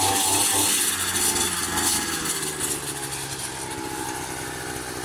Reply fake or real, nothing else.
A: real